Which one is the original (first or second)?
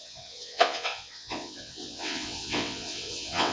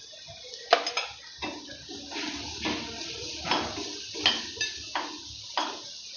second